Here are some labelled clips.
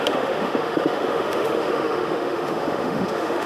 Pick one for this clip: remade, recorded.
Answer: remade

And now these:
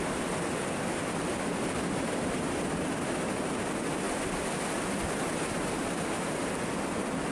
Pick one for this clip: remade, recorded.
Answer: recorded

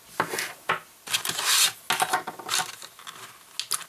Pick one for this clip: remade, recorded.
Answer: recorded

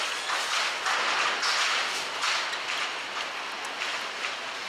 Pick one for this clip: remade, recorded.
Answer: recorded